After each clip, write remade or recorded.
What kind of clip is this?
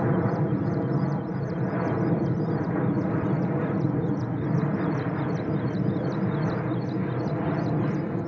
remade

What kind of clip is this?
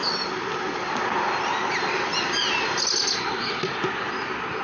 recorded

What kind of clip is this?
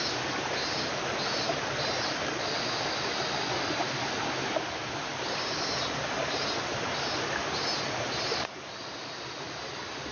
recorded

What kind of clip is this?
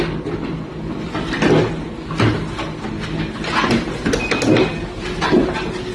recorded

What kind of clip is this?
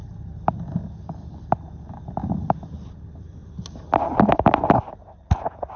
recorded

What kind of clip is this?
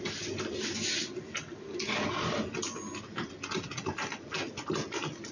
recorded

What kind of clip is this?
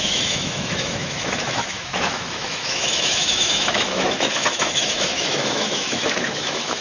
remade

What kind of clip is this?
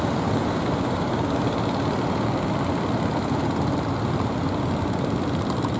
recorded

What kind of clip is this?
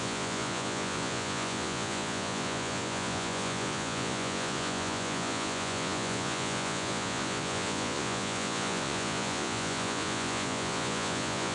remade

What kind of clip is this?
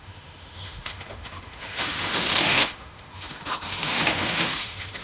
remade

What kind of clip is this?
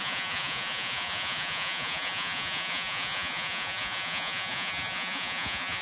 remade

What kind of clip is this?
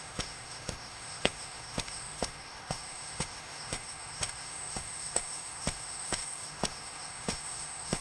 remade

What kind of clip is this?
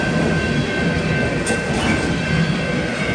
recorded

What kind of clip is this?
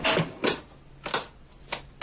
recorded